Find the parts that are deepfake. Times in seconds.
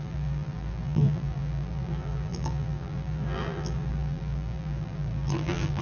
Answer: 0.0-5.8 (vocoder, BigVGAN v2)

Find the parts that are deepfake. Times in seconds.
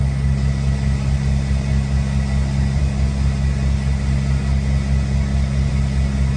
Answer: none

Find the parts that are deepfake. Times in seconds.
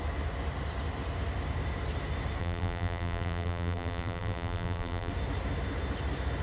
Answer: 2.4-5.1 (vocoder, BigVGAN v2)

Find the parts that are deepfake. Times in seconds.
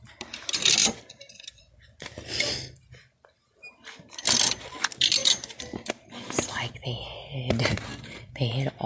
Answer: 0.8-1.4 (vocoder, BigVGAN v2)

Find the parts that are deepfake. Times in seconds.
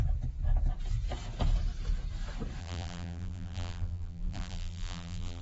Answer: 2.6-5.4 (vocoder, BigVGAN v2)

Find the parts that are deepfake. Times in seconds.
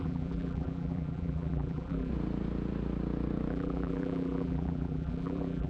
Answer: 0.0-2.1 (vocoder, BigVGAN v2); 3.5-5.7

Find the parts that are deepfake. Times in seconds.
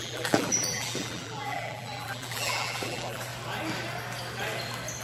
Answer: 0.0-3.3 (vocoder, BigVGAN v2)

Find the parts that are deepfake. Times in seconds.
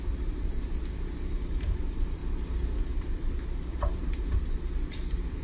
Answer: 0.0-2.2 (vocoder, BigVGAN v2); 2.8-5.4